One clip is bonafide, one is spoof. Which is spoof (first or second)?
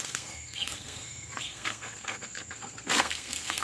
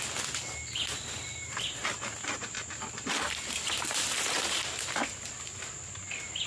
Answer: first